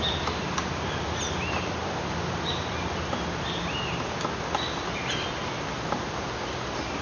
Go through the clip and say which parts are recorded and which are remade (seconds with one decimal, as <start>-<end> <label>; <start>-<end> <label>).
0.0-7.0 recorded